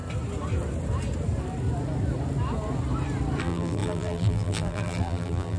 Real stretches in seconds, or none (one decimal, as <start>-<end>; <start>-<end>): 0.0-3.4